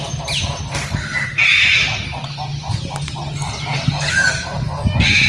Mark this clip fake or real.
real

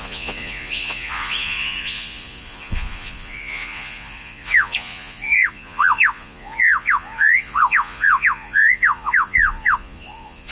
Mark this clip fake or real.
fake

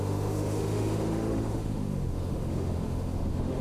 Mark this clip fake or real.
fake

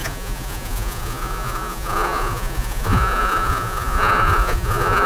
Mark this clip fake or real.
fake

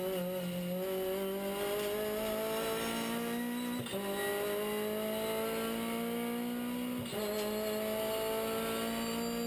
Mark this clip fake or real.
real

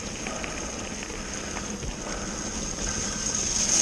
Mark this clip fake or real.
real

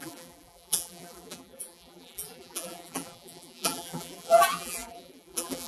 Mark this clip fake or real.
fake